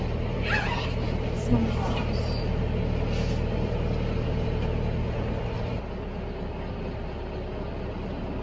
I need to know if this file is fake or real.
real